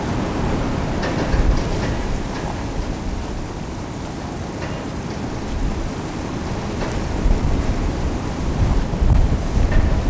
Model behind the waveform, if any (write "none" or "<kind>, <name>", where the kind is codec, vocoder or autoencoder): none